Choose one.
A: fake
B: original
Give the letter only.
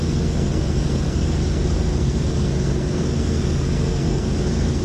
A